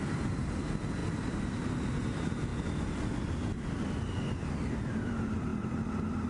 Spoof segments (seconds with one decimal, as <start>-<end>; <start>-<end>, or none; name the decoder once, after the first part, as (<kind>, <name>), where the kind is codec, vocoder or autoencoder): none